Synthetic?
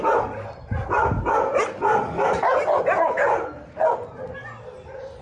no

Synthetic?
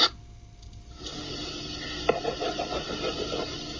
no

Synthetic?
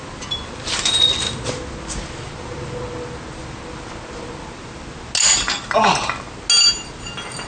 no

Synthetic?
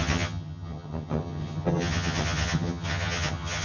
yes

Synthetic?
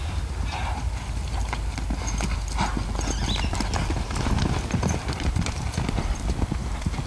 no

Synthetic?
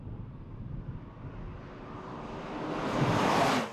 no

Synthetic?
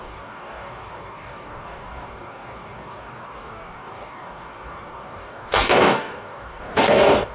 yes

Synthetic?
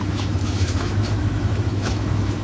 yes